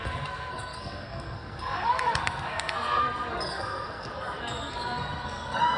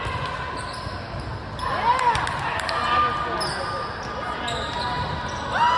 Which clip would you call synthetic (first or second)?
first